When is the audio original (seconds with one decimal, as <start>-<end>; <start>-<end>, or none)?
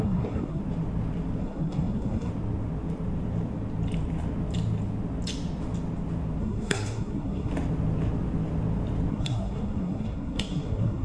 0.6-1.4; 2.3-6.4; 7.5-9.1